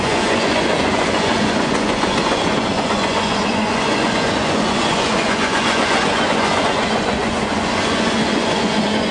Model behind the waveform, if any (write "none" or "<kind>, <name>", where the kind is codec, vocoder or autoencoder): vocoder, Vocos